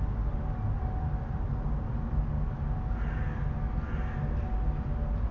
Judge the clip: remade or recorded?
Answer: recorded